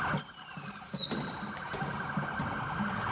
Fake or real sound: real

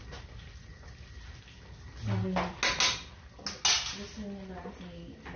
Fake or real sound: real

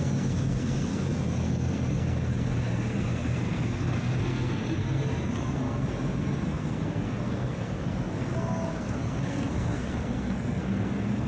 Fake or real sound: fake